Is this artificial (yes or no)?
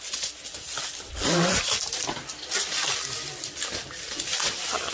no